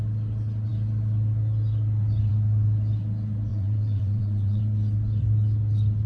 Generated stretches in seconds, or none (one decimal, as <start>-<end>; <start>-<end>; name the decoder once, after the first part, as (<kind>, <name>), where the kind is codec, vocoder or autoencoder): 3.5-4.6 (vocoder, WaveNeXt)